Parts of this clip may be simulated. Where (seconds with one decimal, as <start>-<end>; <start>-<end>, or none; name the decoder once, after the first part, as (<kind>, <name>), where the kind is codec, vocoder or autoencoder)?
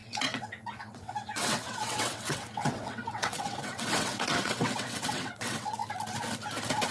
0.0-5.8 (vocoder, WaveNeXt)